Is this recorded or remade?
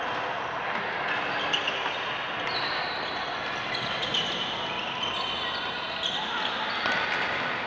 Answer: recorded